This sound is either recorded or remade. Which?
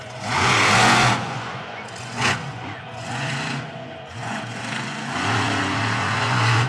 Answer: remade